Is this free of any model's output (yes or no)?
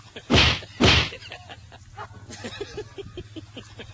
yes